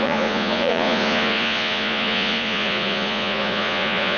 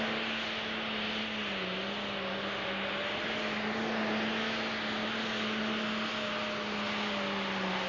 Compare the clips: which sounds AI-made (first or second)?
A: first